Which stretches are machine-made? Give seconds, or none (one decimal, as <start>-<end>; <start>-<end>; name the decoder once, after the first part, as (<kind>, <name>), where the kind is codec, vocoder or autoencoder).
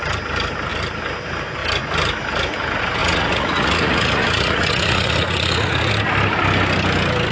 3.0-5.9 (vocoder, Vocos)